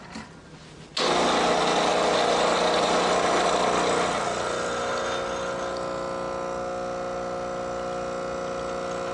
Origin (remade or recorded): recorded